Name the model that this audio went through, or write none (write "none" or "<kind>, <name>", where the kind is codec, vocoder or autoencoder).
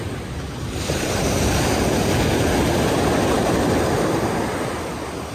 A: none